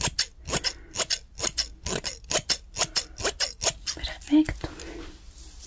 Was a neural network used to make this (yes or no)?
no